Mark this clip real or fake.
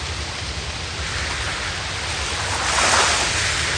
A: real